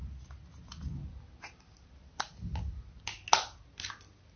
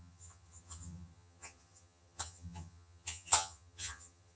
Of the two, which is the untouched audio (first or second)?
first